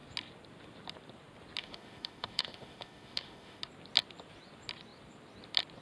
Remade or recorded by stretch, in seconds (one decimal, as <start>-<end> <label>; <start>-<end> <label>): 0.0-1.6 recorded; 1.6-3.6 remade; 3.6-5.8 recorded